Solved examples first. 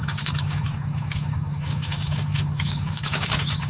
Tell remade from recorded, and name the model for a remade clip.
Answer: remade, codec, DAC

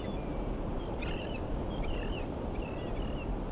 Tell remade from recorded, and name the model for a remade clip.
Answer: recorded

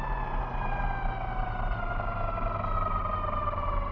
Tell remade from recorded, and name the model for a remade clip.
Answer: recorded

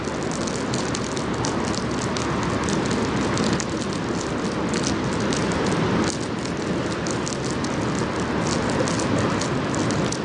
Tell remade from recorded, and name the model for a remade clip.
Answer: recorded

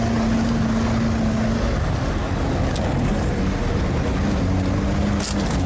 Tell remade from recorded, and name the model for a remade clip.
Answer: recorded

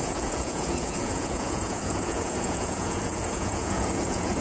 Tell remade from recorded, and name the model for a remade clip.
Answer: remade, vocoder, Vocos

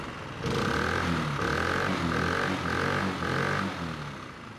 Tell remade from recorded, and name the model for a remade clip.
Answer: recorded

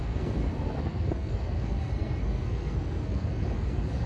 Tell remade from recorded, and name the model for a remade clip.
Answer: remade, codec, SNAC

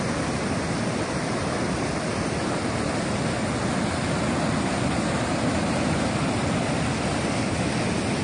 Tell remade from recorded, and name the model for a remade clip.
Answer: recorded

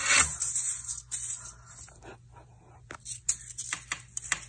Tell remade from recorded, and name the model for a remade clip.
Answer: recorded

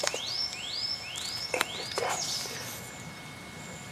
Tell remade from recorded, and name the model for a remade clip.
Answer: recorded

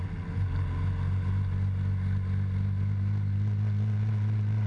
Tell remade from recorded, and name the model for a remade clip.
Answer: recorded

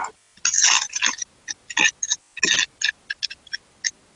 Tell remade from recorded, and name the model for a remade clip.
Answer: recorded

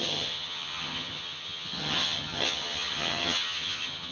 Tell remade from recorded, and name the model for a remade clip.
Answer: remade, vocoder, HiFi-GAN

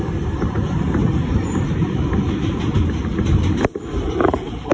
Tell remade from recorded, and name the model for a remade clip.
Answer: remade, vocoder, BigVGAN v2